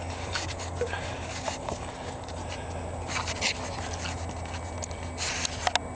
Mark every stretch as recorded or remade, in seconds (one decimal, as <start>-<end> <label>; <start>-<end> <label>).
0.0-2.4 remade; 2.4-6.0 recorded